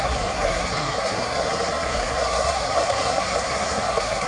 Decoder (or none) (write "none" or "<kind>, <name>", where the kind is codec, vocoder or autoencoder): codec, SNAC